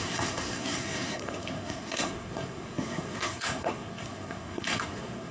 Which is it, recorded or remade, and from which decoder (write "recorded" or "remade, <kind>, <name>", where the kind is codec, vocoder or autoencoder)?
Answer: remade, codec, SNAC